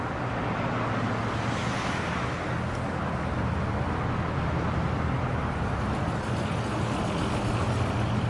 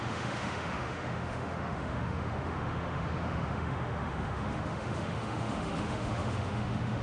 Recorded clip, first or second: first